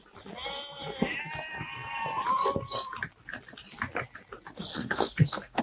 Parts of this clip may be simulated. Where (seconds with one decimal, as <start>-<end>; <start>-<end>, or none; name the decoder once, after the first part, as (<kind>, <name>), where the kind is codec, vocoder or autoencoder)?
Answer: 4.7-5.6 (codec, SNAC)